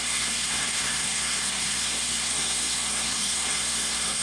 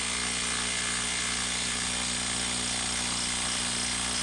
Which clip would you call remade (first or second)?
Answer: first